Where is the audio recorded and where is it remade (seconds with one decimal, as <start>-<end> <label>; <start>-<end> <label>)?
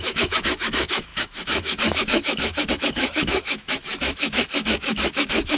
0.0-5.6 remade